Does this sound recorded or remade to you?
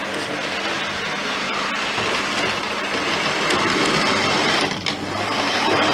recorded